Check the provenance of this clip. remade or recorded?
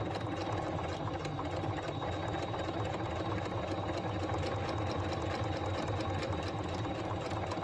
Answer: recorded